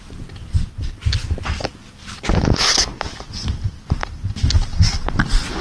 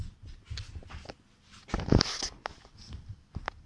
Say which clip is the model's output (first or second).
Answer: first